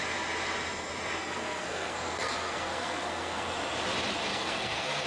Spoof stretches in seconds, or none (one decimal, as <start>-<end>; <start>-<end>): 1.2-3.5; 4.3-5.1